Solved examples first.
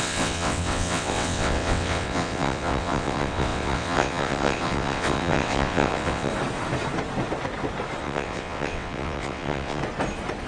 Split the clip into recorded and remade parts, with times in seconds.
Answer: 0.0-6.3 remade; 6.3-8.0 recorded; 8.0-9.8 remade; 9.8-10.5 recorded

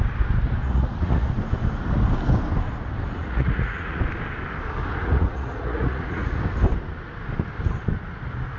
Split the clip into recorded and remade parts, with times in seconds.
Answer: 0.0-0.6 recorded; 0.6-1.3 remade; 1.3-3.2 recorded; 3.2-4.0 remade; 4.0-5.0 recorded; 5.0-6.4 remade; 6.4-8.6 recorded

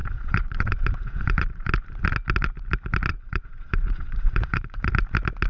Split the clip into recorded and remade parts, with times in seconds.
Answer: 0.0-1.7 remade; 1.7-3.1 recorded; 3.1-4.9 remade; 4.9-5.5 recorded

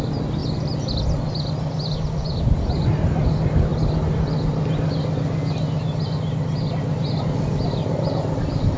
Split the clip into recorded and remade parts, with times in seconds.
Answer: 0.0-8.8 recorded

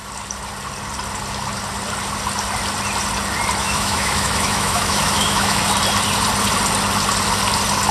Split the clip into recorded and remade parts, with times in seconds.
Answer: 0.0-3.6 recorded; 3.6-5.6 remade; 5.6-7.9 recorded